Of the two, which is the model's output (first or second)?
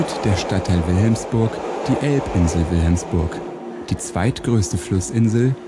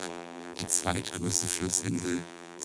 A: second